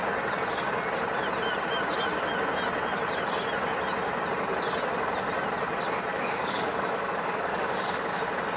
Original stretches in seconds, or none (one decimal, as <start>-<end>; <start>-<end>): 0.0-6.1; 8.2-8.6